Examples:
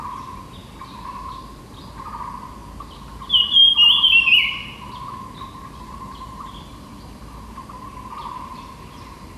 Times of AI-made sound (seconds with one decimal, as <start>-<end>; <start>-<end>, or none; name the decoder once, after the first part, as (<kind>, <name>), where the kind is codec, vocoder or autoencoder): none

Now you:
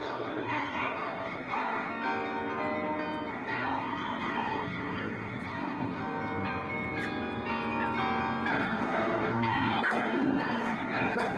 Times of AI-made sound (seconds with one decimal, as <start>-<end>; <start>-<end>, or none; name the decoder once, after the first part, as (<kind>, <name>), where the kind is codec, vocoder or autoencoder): 0.0-1.9 (codec, SNAC); 3.3-6.0; 8.5-11.4

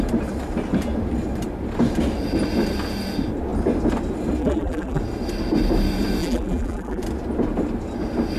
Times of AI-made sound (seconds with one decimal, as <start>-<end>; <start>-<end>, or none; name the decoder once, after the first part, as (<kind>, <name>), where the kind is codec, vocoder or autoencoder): 4.4-5.0 (vocoder, BigVGAN v2); 6.2-7.0

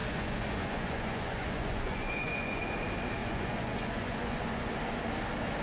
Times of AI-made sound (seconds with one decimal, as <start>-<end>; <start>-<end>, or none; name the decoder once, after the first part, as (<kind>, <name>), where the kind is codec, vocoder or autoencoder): 0.0-2.6 (vocoder, Vocos); 3.2-4.7

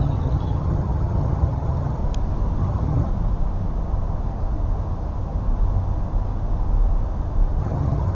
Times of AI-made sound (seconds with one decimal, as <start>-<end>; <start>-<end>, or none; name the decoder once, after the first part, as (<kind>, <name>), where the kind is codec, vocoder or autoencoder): 0.0-2.0 (vocoder, HiFi-GAN); 2.6-3.1; 7.6-8.1

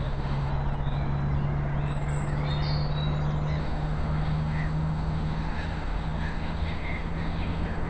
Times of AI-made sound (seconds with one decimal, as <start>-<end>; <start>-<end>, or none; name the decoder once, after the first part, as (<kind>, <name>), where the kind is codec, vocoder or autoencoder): 0.0-0.5 (autoencoder, DAC-VAE); 3.6-7.9

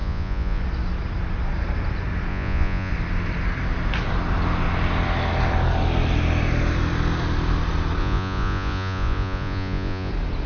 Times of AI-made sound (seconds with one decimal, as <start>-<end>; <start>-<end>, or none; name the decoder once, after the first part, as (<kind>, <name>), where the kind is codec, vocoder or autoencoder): 0.0-0.6 (vocoder, Vocos); 2.3-2.9; 8.0-10.1

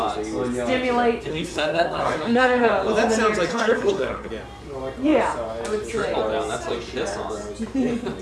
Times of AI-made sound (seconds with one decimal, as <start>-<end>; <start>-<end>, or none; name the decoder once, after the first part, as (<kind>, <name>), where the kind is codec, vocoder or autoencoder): 1.3-2.7 (codec, SNAC); 3.5-4.3